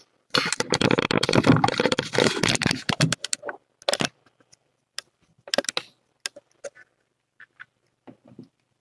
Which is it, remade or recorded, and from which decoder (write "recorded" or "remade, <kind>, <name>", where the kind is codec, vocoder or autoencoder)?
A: recorded